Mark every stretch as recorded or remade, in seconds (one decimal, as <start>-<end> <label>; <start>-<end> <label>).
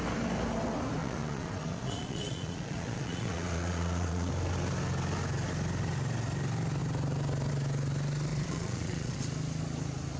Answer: 0.0-1.0 recorded; 1.0-4.3 remade; 4.3-8.3 recorded; 8.3-9.2 remade; 9.2-10.2 recorded